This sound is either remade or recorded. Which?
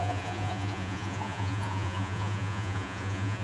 remade